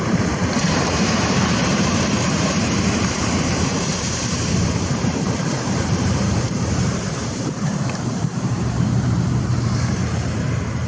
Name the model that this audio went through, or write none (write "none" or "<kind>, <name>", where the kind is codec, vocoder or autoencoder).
vocoder, BigVGAN v2